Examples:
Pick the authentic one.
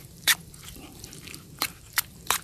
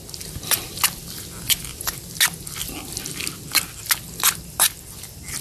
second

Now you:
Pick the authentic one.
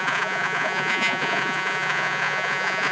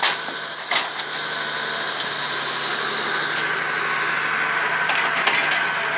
second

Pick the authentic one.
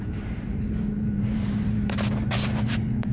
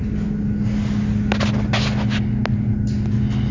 second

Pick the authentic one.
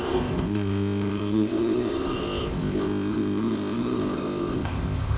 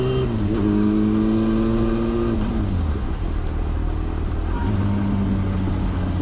second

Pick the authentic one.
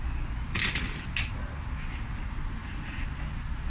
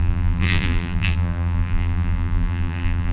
first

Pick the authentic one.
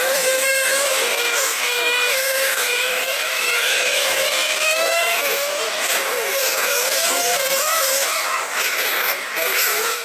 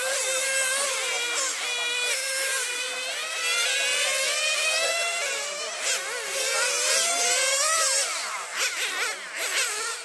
second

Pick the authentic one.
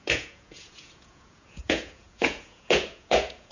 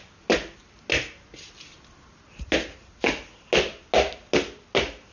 second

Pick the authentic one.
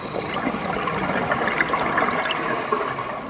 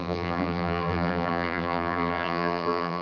first